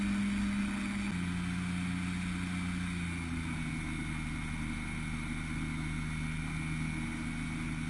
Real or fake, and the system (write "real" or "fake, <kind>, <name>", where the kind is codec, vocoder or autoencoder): real